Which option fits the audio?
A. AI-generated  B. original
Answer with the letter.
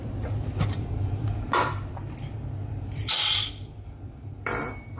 A